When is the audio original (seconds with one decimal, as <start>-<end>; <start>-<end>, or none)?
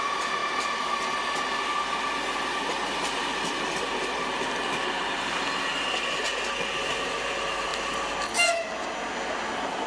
0.0-0.4; 1.0-3.2; 3.7-9.9